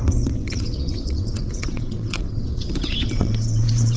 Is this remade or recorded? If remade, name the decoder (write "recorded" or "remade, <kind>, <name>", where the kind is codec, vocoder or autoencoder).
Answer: remade, vocoder, WaveNeXt